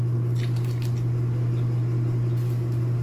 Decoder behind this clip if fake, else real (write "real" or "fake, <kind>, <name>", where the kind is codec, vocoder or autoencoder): real